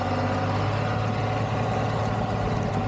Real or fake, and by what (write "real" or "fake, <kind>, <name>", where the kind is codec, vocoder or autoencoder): real